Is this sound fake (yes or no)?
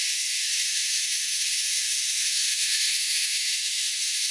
yes